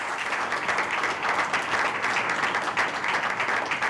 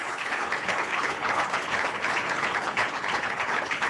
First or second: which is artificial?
second